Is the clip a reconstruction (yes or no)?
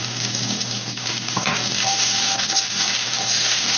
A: yes